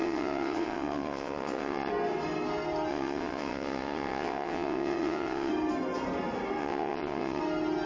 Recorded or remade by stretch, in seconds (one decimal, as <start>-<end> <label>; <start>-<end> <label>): 0.0-1.9 remade; 1.9-2.9 recorded; 2.9-5.5 remade; 5.5-6.6 recorded; 6.6-7.4 remade; 7.4-7.9 recorded